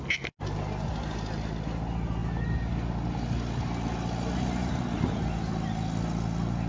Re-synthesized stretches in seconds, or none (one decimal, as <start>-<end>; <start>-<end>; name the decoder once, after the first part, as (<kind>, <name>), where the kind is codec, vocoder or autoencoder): none